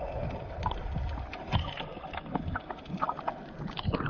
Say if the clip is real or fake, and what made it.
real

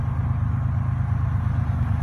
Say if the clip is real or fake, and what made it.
real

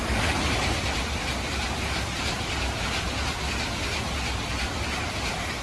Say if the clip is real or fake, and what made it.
real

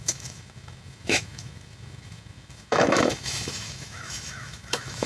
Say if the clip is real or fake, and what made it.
fake, autoencoder, DAC-VAE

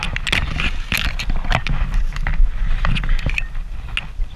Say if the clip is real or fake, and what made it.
real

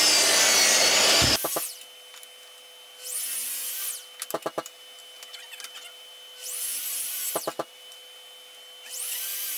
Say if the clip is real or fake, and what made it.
real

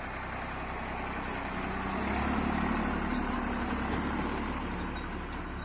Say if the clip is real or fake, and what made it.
real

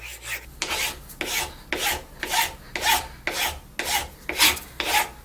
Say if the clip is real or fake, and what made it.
real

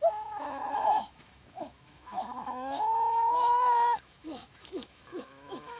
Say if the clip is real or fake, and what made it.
fake, autoencoder, DAC-VAE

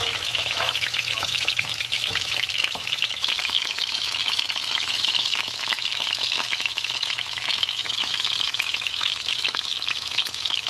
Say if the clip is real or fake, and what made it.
fake, autoencoder, DAC-VAE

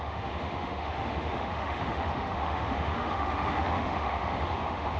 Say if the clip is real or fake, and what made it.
fake, autoencoder, DAC-VAE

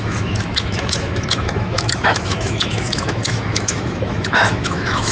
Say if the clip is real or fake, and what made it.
fake, autoencoder, DAC-VAE